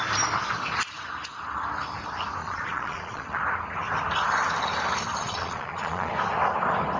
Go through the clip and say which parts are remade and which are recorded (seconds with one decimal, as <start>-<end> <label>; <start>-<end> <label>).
0.0-2.4 recorded; 2.4-3.4 remade; 3.4-5.2 recorded; 5.2-6.1 remade; 6.1-7.0 recorded